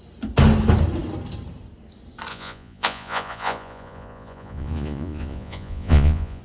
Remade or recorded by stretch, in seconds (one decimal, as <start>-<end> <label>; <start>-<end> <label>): 0.0-2.3 recorded; 2.3-6.4 remade